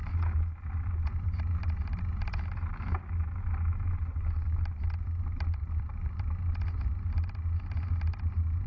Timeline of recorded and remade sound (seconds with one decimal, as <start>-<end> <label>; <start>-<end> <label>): 0.0-8.7 recorded